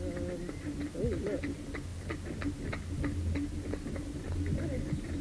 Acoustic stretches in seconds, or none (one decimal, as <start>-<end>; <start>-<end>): 0.0-5.2